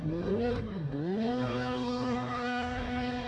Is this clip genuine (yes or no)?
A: no